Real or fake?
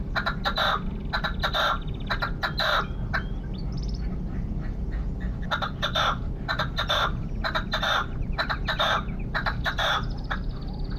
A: real